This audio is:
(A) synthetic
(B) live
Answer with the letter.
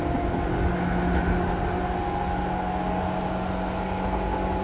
B